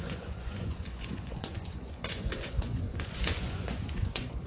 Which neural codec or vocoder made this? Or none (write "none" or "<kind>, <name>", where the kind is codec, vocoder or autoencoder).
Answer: vocoder, Vocos